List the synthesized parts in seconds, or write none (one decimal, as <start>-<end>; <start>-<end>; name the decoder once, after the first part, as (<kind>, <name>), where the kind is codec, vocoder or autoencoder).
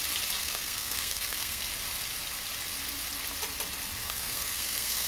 0.4-1.6 (codec, SNAC); 4.0-5.1